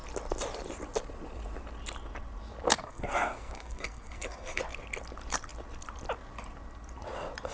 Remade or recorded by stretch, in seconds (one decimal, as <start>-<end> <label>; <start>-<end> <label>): 0.0-2.7 recorded; 2.7-4.6 remade; 4.6-7.5 recorded